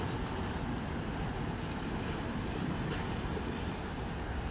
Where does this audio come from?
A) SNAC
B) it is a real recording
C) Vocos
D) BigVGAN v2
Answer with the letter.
B